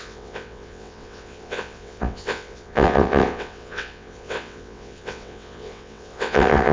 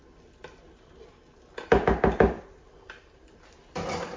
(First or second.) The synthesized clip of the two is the first